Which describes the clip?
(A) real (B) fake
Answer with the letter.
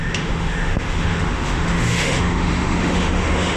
B